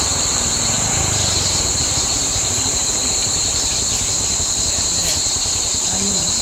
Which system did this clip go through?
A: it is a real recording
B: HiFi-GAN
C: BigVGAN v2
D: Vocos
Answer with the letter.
C